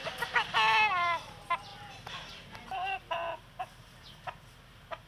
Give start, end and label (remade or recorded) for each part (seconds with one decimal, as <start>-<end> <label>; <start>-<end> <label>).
0.0-5.1 recorded